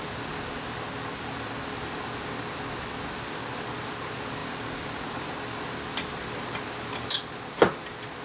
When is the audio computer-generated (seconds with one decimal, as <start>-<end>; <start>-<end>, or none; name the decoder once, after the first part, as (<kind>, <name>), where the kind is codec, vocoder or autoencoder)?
none